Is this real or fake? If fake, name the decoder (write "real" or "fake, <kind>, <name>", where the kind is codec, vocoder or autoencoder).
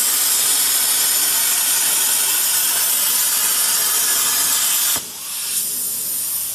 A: real